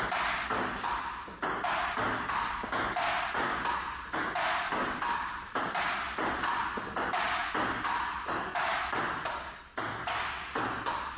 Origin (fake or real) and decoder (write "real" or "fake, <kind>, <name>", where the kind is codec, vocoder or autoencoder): real